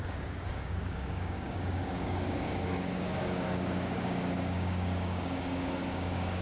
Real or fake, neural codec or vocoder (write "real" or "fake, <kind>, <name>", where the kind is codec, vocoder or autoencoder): fake, codec, DAC